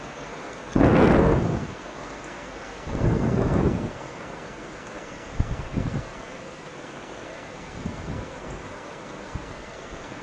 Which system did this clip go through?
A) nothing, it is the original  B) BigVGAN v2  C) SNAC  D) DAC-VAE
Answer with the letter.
C